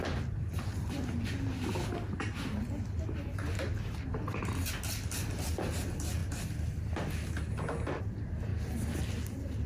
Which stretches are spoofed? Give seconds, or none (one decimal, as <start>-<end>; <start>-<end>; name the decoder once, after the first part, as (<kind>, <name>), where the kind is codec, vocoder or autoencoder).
none